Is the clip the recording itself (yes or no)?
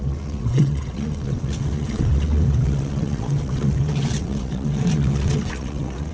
no